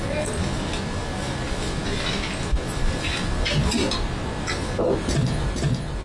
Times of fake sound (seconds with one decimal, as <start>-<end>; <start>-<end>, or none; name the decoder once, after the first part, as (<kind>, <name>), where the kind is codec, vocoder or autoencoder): none